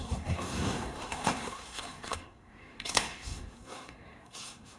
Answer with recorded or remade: remade